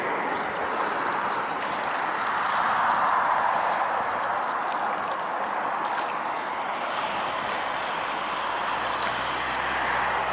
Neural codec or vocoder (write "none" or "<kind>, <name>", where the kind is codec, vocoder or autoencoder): none